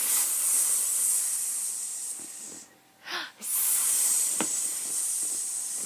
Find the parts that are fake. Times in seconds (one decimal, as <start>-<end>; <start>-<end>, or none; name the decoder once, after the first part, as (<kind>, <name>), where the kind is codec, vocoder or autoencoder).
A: 3.5-4.8 (vocoder, BigVGAN v2)